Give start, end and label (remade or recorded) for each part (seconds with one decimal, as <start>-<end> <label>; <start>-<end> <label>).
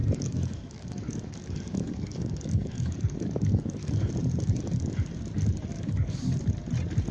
0.0-4.1 remade; 4.1-5.7 recorded; 5.7-6.4 remade; 6.4-7.1 recorded